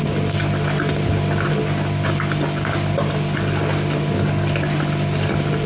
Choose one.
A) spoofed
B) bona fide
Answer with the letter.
B